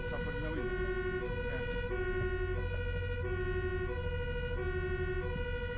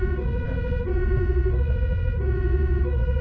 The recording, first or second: first